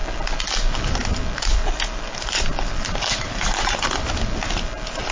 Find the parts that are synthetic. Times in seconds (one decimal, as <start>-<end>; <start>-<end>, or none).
0.0-1.6; 2.2-5.1